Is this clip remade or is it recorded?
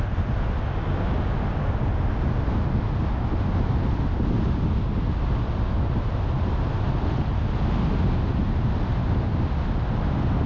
recorded